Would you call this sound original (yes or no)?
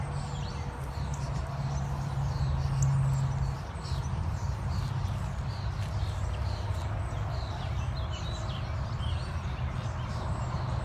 yes